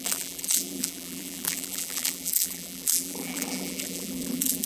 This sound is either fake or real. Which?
fake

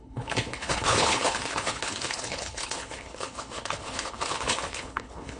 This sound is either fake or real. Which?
fake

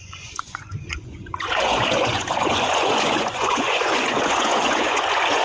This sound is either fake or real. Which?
fake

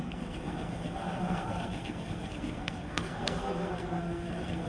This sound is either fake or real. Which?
fake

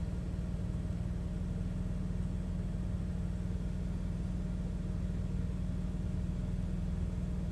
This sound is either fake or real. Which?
real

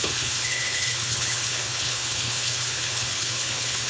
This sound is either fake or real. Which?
fake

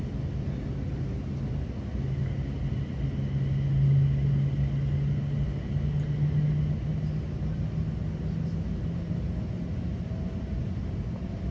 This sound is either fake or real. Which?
real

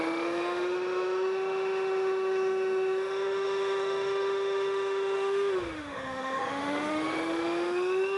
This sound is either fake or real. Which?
fake